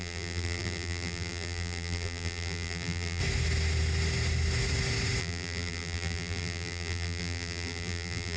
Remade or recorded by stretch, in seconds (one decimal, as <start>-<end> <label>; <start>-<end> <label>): 0.0-3.2 remade; 3.2-5.2 recorded; 5.2-8.4 remade